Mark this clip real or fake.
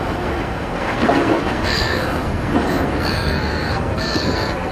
fake